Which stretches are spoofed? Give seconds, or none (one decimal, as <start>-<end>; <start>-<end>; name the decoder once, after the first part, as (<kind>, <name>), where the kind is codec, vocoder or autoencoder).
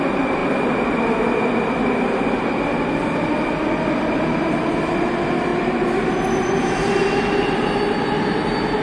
5.5-6.1 (vocoder, BigVGAN v2)